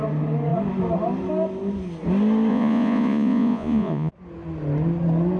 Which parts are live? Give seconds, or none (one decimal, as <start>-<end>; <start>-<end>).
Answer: 0.0-2.5; 4.1-5.4